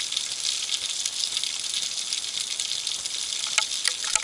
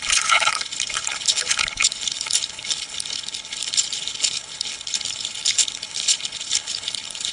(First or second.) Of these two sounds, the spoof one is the second